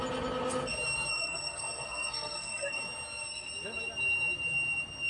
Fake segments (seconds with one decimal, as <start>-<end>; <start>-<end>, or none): 1.1-2.8